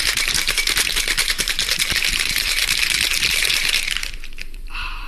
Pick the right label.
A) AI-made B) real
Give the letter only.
A